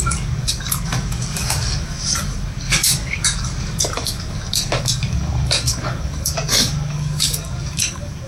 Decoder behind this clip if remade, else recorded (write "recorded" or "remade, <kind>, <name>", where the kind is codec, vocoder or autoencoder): remade, codec, DAC